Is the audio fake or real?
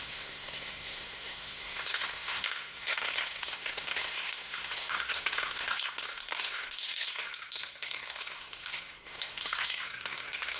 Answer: fake